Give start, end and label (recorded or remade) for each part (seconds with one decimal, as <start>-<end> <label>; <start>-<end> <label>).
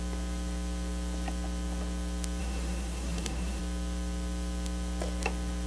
0.0-2.4 recorded; 2.4-3.6 remade; 3.6-5.7 recorded